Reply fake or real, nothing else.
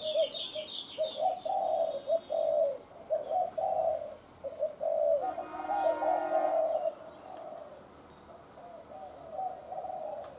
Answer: real